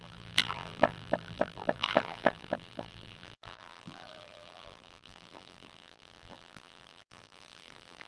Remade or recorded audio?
remade